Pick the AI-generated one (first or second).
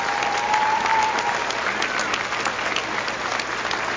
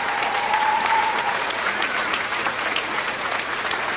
second